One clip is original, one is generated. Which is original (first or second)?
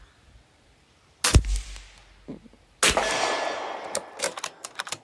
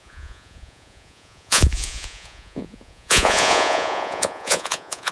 first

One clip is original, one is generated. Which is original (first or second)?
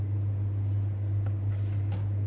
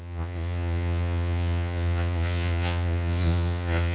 first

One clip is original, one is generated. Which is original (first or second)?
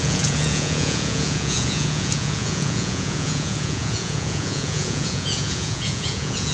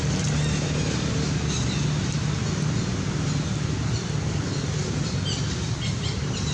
second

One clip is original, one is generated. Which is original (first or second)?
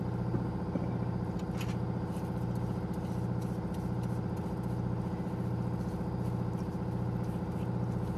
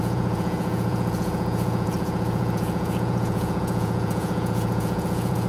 first